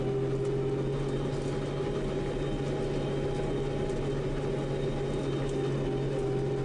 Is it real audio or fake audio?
real